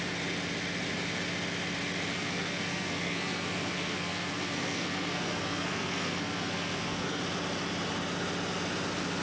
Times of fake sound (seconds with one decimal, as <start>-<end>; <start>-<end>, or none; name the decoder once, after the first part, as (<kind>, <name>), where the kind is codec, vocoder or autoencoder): 2.1-7.2 (codec, SNAC)